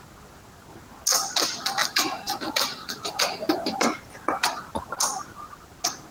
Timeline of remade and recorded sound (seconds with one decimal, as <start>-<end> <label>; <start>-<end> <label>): 0.0-1.8 recorded; 1.8-4.9 remade; 4.9-6.1 recorded